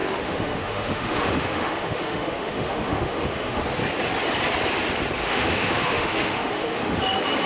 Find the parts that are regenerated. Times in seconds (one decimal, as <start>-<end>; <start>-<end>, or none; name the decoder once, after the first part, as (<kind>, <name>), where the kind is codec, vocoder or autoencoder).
0.0-3.6 (autoencoder, DAC-VAE); 5.2-7.0

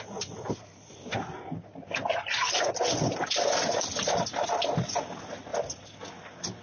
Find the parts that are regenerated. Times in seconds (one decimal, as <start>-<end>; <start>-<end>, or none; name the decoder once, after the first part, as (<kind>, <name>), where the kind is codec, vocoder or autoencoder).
none

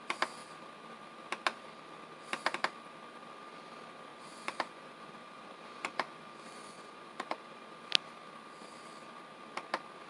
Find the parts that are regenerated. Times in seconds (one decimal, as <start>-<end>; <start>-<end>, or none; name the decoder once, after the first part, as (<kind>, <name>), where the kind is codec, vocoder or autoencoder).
4.1-7.9 (vocoder, Vocos)

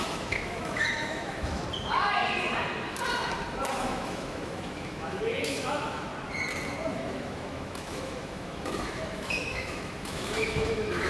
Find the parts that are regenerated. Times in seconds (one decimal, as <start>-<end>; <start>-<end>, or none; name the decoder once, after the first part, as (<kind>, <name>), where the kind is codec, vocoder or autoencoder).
0.0-1.6 (autoencoder, DAC-VAE); 3.7-6.1; 6.9-11.1

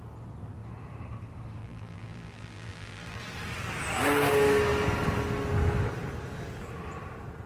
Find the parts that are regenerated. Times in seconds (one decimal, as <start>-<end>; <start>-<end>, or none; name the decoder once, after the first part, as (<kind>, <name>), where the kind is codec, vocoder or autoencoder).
1.6-3.2 (vocoder, BigVGAN v2)